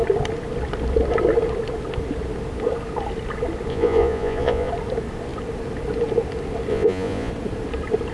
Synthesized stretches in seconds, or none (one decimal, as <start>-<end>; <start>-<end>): 3.7-4.7; 6.7-7.3